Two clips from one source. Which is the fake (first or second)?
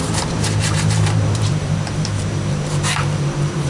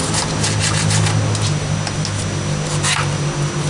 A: first